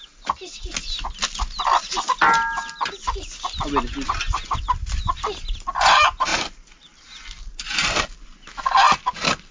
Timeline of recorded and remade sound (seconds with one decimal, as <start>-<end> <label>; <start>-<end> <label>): 0.0-9.5 recorded